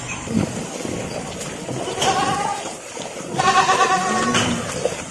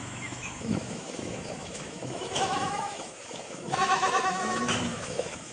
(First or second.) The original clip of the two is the first